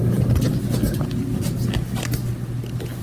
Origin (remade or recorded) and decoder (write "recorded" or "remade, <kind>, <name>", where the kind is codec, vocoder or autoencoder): recorded